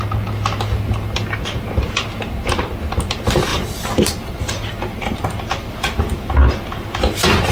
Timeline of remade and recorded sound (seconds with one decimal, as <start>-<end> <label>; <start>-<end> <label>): 0.0-3.5 recorded; 3.5-6.7 remade; 6.7-7.5 recorded